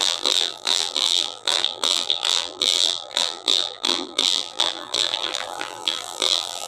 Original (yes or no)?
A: no